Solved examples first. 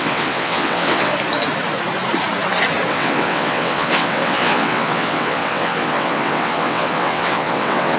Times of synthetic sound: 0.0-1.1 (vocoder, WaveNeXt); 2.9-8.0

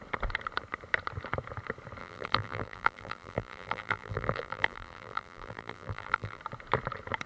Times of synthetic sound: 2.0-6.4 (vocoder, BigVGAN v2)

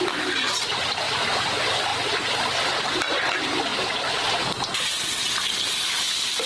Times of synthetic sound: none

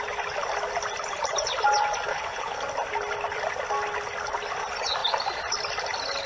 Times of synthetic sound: 2.1-2.6 (codec, HILCodec)

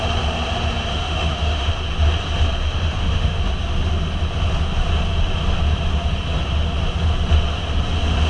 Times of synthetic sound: 0.9-1.7 (autoencoder, DAC-VAE); 2.6-3.4